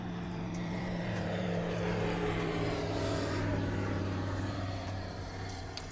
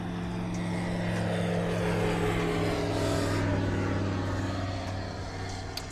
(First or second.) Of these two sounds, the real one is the second